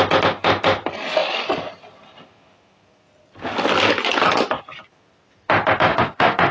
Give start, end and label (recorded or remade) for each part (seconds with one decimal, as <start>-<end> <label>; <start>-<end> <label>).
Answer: 0.0-5.9 recorded; 5.9-6.5 remade